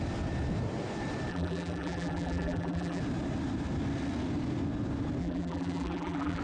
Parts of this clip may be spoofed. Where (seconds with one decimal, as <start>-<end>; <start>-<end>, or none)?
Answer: 1.3-3.0; 5.2-6.4